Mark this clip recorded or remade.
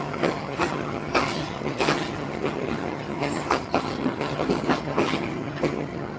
remade